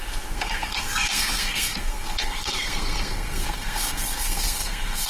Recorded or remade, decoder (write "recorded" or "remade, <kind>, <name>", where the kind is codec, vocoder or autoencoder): remade, codec, SNAC